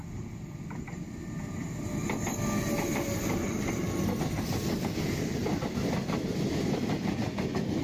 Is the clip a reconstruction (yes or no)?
no